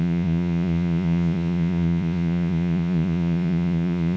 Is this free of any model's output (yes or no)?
no